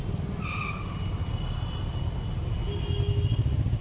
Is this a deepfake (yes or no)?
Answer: no